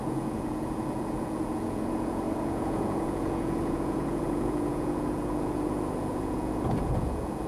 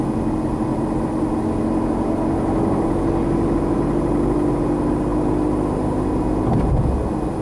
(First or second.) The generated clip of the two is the first